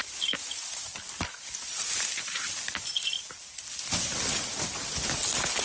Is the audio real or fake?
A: real